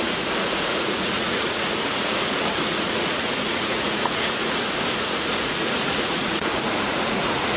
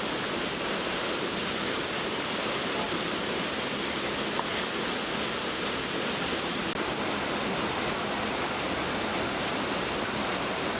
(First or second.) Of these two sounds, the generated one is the first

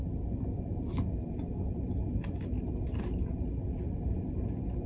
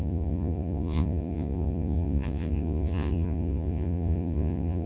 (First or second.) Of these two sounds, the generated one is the second